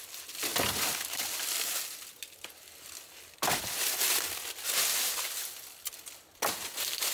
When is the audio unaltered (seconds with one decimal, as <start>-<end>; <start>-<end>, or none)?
0.0-7.1